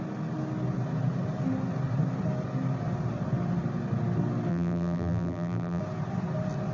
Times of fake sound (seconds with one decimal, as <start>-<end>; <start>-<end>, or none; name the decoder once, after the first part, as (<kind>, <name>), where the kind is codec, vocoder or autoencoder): 4.5-5.8 (vocoder, BigVGAN v2)